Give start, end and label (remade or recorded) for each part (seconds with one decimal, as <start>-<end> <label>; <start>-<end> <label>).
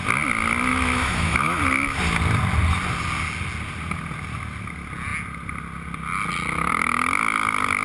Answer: 0.0-0.7 recorded; 0.7-2.0 remade; 2.0-7.8 recorded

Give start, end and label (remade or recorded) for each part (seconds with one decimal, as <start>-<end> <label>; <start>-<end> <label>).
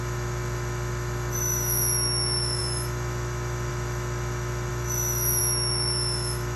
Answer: 0.0-6.6 remade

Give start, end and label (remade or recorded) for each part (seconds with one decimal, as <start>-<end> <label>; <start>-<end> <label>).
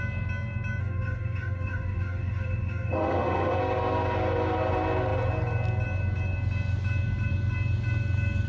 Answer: 0.0-0.8 recorded; 0.8-3.6 remade; 3.6-8.5 recorded